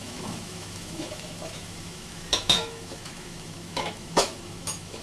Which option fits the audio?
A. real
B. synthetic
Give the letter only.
B